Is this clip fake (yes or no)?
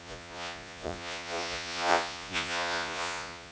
yes